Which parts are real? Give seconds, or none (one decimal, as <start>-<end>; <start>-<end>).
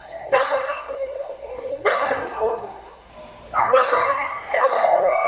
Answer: 3.1-3.6